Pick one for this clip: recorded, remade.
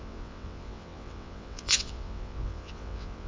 remade